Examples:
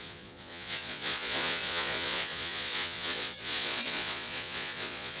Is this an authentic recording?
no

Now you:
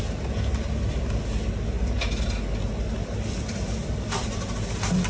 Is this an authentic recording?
yes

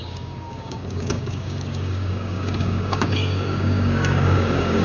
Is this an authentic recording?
no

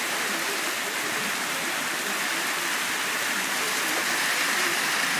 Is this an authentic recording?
yes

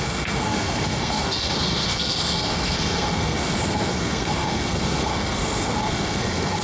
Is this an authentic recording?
no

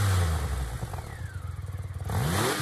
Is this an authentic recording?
yes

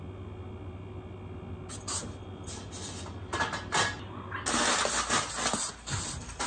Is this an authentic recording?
yes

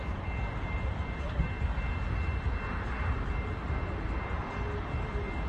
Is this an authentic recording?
yes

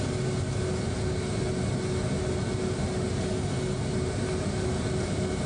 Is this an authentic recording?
yes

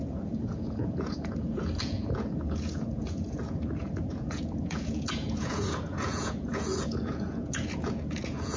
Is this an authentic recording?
no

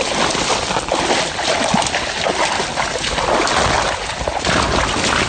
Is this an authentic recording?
yes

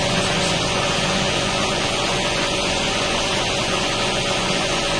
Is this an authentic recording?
no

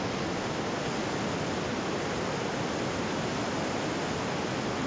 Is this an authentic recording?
yes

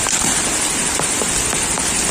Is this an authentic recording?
yes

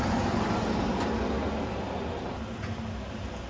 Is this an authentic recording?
yes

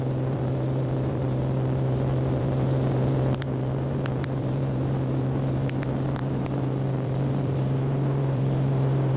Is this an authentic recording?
no